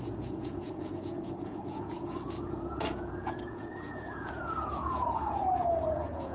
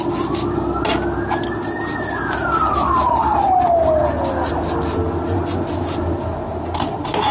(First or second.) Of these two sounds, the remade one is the first